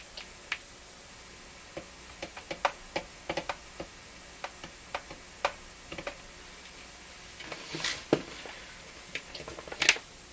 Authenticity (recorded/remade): recorded